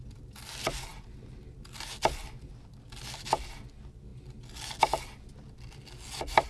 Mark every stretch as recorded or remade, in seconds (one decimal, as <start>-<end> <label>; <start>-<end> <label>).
0.0-6.5 recorded